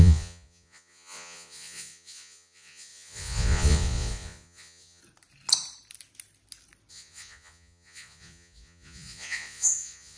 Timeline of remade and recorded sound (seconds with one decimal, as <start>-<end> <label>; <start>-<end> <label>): 0.0-5.0 remade; 5.0-6.9 recorded; 6.9-10.2 remade